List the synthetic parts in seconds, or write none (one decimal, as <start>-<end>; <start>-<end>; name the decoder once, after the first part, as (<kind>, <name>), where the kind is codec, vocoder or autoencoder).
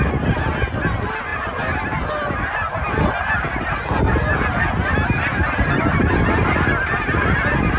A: none